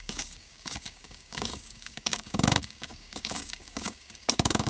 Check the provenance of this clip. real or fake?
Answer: fake